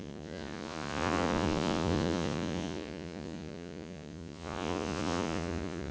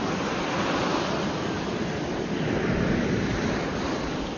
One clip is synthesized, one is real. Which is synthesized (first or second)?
first